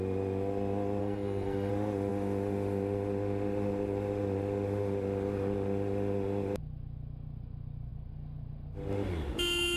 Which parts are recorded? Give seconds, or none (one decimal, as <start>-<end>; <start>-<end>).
0.0-1.0; 1.7-9.8